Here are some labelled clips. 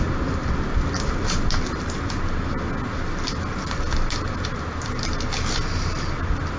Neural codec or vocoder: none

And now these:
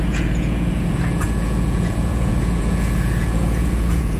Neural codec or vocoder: vocoder, Vocos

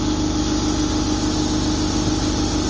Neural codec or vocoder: none